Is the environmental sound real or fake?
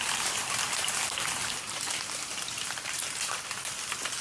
real